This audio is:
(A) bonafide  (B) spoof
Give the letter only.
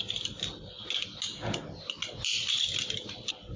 A